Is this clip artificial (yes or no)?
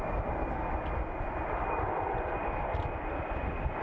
no